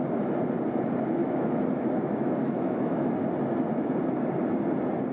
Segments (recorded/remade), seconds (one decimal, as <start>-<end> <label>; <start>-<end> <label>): 0.0-1.2 recorded; 1.2-3.1 remade; 3.1-5.1 recorded